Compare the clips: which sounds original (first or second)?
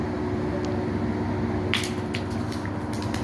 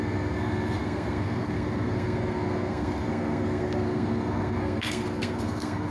first